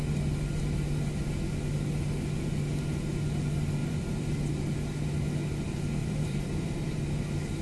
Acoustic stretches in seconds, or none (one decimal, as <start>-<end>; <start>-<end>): 0.0-3.8; 4.5-6.0; 7.0-7.6